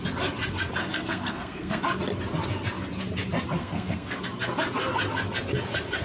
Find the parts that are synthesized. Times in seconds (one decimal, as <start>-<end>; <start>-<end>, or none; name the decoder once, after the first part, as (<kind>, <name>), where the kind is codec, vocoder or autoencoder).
0.8-1.8 (codec, SNAC); 3.6-4.2